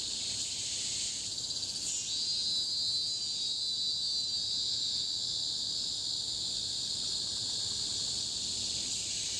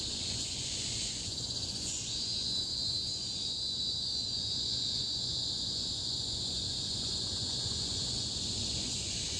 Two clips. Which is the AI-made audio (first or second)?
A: second